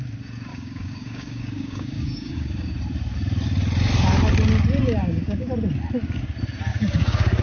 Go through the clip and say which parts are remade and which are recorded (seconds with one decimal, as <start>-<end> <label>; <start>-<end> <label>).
0.0-0.5 recorded; 0.5-2.7 remade; 2.7-5.0 recorded; 5.0-5.5 remade; 5.5-6.7 recorded; 6.7-7.4 remade